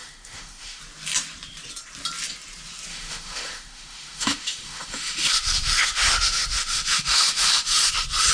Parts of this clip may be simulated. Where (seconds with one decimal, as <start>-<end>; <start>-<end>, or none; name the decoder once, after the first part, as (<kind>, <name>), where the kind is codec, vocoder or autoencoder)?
0.0-0.8 (autoencoder, DAC-VAE); 2.9-7.9